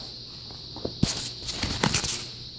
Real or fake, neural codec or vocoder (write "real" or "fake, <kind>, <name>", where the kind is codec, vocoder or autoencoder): real